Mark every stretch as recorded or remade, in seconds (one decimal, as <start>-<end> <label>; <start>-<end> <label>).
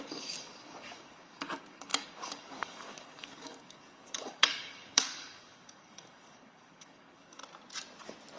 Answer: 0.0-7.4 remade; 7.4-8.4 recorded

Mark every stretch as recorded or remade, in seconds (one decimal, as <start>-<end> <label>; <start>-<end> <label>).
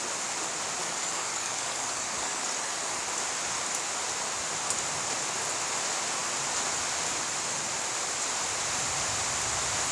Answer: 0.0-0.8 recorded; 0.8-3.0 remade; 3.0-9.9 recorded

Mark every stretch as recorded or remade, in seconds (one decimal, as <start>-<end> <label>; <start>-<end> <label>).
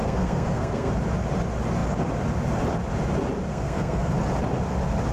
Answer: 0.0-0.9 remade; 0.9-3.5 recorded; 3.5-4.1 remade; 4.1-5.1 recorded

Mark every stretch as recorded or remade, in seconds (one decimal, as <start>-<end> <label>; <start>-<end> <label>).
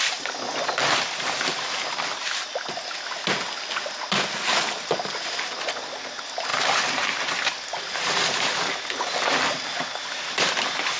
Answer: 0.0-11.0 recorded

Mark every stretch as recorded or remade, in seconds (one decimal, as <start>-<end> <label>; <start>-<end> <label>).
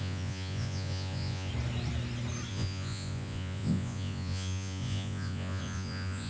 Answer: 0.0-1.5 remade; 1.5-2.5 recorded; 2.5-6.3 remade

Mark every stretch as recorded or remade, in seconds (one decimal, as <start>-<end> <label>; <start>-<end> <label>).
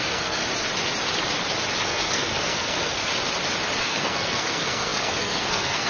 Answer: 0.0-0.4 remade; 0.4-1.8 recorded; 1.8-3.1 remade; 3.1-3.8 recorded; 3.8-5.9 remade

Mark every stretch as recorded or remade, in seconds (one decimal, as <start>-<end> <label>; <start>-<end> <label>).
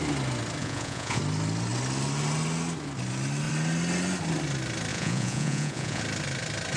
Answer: 0.0-0.6 recorded; 0.6-1.2 remade; 1.2-4.9 recorded; 4.9-6.0 remade; 6.0-6.8 recorded